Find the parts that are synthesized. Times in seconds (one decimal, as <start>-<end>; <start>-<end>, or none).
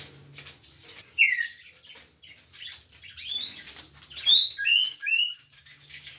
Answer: 4.9-6.2